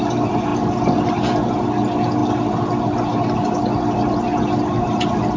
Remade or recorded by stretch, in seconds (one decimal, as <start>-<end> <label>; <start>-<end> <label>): 0.0-5.4 recorded